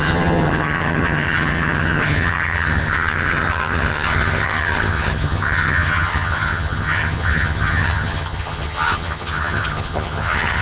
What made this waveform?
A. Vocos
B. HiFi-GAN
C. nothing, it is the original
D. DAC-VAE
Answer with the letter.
B